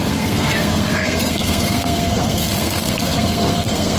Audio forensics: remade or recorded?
remade